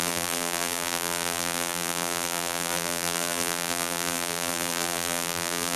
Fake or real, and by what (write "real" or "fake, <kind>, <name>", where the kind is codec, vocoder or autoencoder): fake, vocoder, BigVGAN v2